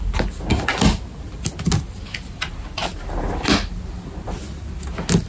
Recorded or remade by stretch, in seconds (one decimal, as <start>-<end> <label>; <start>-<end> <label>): 0.0-5.3 recorded